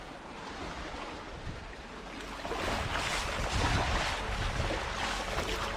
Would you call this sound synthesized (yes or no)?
no